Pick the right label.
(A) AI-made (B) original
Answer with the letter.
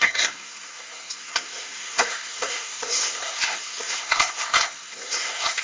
A